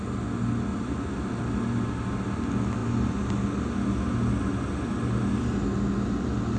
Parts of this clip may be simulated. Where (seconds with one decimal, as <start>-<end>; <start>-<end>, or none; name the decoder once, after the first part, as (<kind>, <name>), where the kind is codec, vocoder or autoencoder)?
0.7-1.4 (vocoder, BigVGAN v2)